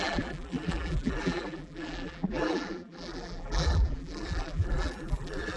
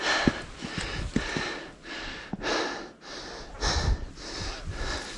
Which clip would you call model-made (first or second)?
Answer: first